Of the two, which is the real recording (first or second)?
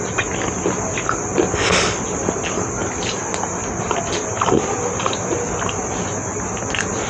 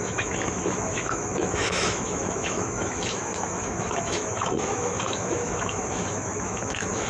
first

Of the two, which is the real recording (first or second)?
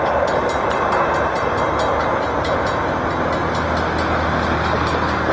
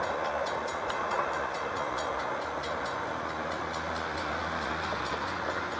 first